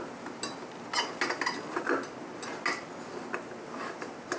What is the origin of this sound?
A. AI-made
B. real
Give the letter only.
B